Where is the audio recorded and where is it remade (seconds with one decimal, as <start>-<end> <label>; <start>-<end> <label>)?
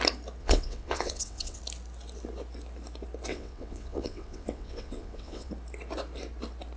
0.0-0.4 recorded; 0.4-1.6 remade; 1.6-3.3 recorded; 3.3-5.5 remade; 5.5-6.8 recorded